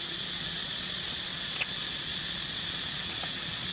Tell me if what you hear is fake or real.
fake